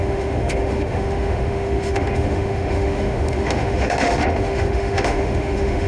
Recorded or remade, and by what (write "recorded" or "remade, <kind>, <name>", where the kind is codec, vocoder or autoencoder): remade, autoencoder, DAC-VAE